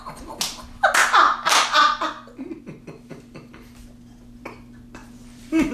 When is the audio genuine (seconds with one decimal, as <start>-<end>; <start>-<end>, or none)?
0.0-1.0; 2.6-5.0